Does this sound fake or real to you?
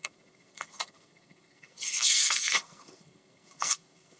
fake